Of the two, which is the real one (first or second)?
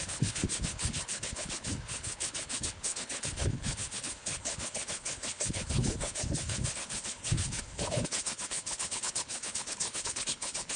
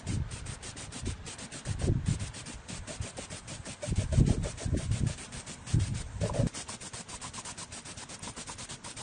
second